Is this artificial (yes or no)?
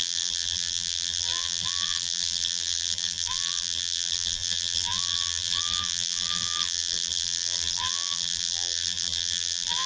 yes